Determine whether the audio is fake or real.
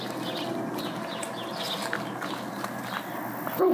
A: real